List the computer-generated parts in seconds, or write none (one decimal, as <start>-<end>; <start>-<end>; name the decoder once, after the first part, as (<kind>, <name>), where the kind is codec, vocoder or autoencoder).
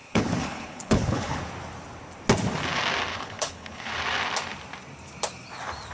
0.0-1.4 (codec, HILCodec); 3.1-3.9